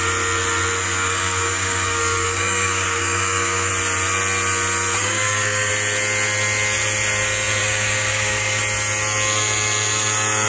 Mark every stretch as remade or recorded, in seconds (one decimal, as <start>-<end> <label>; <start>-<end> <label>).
0.0-1.0 recorded; 1.0-3.7 remade; 3.7-5.0 recorded; 5.0-5.7 remade; 5.7-7.6 recorded; 7.6-8.6 remade; 8.6-10.5 recorded